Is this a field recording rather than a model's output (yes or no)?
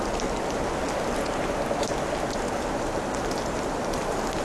yes